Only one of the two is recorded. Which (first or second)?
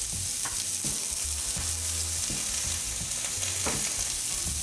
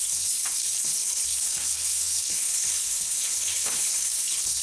first